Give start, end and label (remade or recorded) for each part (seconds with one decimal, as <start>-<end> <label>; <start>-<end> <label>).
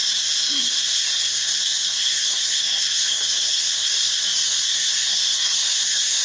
0.0-6.2 remade